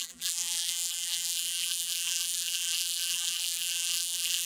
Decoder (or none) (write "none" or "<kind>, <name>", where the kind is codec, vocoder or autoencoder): vocoder, BigVGAN v2